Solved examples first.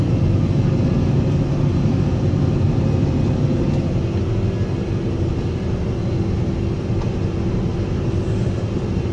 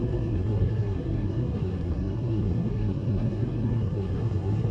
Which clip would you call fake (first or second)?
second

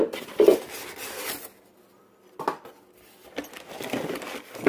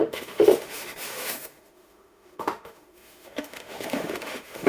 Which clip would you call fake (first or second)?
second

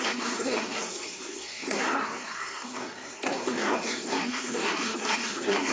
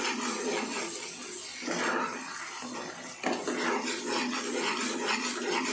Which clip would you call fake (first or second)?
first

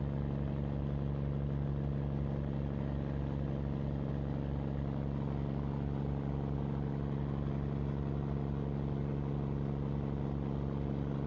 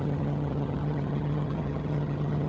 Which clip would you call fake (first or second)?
second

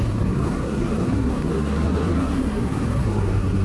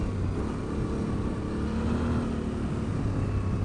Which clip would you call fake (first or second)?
first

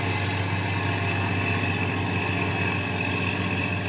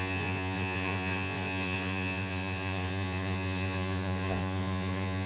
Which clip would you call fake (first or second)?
second